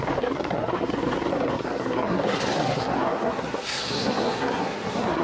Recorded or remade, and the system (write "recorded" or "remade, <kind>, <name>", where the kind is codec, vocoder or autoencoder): remade, codec, SNAC